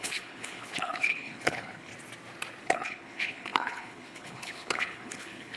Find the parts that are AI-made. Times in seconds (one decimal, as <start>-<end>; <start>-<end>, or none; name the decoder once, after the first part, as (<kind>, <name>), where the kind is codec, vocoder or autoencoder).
0.0-1.9 (codec, HILCodec); 2.6-5.6